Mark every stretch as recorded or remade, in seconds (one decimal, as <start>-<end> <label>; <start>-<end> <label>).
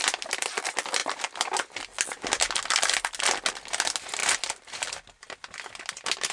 0.0-6.3 recorded